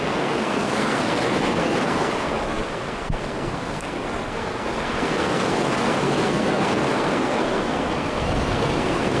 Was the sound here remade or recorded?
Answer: remade